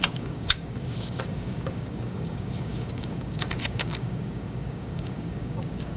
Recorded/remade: remade